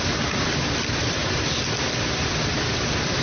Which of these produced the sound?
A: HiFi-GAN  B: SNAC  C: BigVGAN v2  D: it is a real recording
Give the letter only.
D